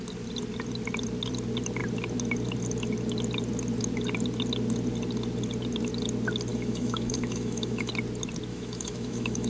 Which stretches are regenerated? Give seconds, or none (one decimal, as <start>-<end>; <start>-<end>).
6.5-7.9; 8.5-9.5